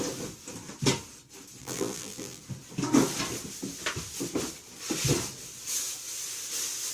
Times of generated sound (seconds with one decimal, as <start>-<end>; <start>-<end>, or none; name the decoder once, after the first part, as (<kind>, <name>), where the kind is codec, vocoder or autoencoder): 1.6-2.4 (vocoder, BigVGAN v2)